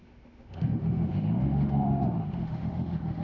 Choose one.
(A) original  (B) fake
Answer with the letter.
B